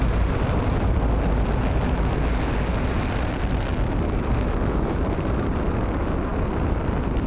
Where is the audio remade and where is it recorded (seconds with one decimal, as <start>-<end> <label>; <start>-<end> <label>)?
0.0-7.3 recorded